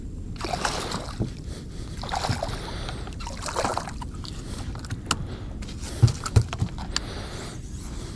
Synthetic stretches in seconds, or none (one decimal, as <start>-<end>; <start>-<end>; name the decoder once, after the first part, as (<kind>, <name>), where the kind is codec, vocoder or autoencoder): 3.7-4.4 (vocoder, BigVGAN v2)